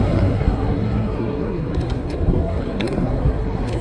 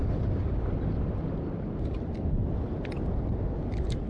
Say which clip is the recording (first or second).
second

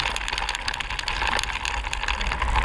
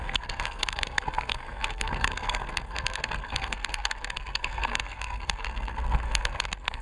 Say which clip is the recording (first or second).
first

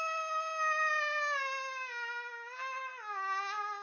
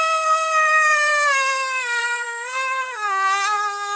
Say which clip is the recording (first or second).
first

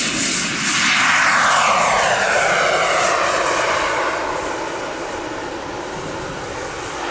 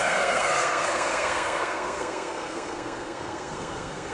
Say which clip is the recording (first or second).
first